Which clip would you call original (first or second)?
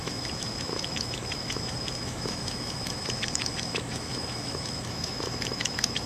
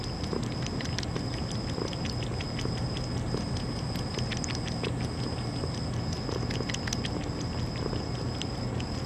second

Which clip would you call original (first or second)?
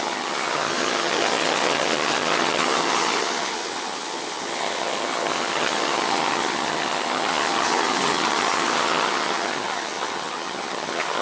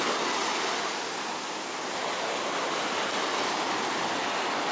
second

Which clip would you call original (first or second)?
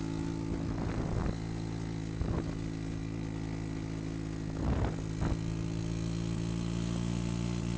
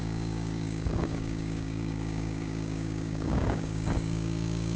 first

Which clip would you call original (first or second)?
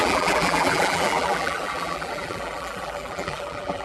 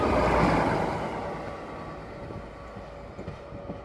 second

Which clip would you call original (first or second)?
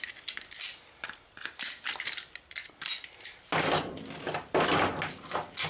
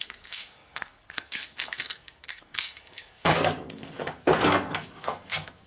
first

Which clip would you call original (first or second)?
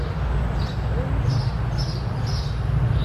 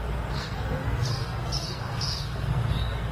first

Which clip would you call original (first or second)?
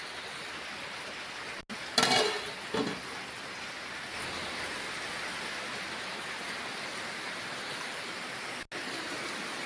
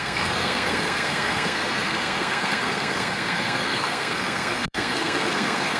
first